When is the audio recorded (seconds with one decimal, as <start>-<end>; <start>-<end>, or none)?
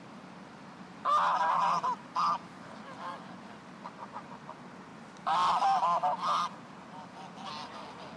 0.0-8.2